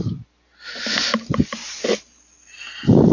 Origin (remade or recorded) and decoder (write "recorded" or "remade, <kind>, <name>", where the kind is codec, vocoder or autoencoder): recorded